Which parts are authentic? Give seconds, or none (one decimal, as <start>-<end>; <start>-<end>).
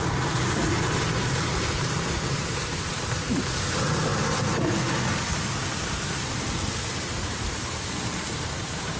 4.1-5.8